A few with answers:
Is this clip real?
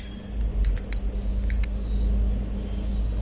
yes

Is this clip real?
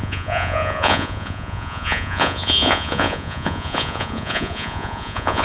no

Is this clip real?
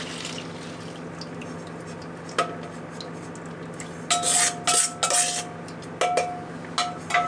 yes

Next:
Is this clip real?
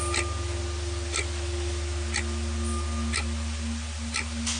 yes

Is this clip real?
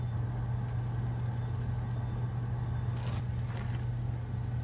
yes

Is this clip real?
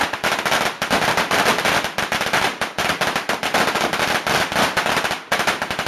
yes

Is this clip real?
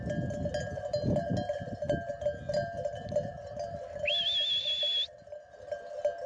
yes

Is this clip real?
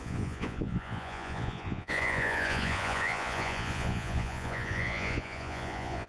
no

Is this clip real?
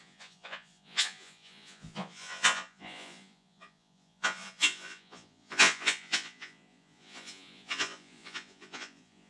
no